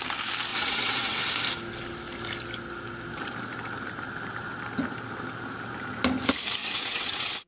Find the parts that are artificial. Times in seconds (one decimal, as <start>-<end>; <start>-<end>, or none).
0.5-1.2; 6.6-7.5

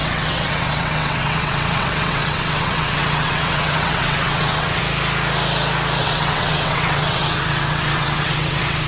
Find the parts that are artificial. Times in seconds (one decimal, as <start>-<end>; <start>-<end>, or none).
0.0-4.8; 6.0-8.9

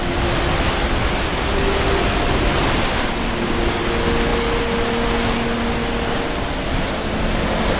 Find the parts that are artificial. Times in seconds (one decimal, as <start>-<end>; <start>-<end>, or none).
none

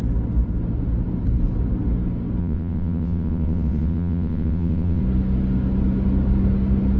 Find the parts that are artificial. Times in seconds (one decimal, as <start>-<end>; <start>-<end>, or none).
2.4-5.0

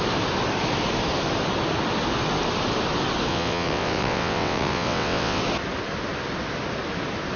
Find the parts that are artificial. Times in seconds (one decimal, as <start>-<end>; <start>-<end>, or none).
3.3-5.4

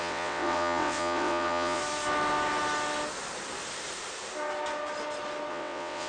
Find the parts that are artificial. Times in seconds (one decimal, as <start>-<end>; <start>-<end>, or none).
0.0-1.8; 5.5-6.1

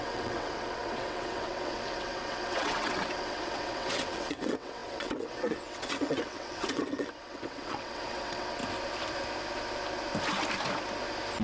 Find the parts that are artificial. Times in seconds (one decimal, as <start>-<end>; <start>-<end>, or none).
0.0-8.6